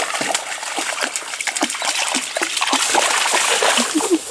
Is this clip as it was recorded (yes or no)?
yes